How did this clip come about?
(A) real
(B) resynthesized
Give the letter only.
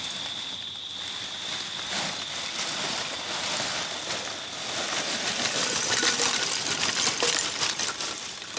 A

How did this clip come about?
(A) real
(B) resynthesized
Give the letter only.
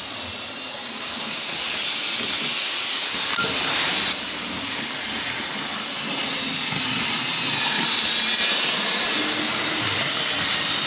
A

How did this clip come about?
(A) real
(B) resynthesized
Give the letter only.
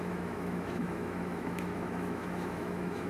B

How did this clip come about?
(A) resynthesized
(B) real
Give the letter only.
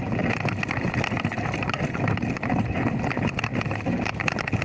B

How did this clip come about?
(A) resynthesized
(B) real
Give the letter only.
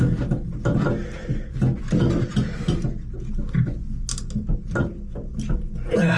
B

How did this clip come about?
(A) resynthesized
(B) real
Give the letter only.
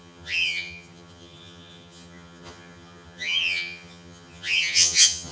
A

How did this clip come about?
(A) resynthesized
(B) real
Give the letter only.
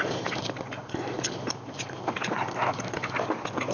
B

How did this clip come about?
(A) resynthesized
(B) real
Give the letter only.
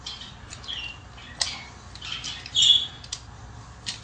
B